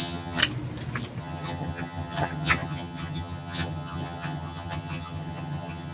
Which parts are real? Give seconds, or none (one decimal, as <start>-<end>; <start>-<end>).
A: 0.4-1.2